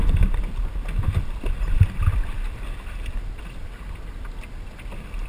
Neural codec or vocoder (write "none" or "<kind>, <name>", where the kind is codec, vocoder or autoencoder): none